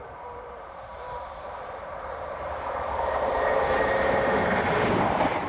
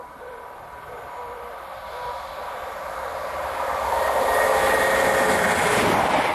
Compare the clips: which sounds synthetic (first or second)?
first